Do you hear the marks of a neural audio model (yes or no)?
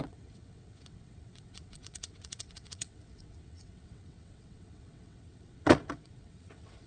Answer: yes